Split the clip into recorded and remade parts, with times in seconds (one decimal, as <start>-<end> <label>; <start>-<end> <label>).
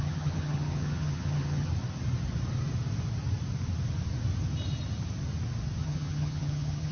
0.0-1.7 remade; 1.7-5.8 recorded; 5.8-6.9 remade